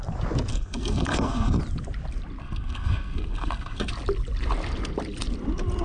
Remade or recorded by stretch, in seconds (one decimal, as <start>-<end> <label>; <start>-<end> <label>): 0.0-0.5 recorded; 0.5-1.6 remade; 1.6-2.4 recorded; 2.4-3.9 remade; 3.9-5.8 recorded